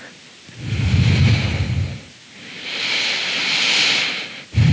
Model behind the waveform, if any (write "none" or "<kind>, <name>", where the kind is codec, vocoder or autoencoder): none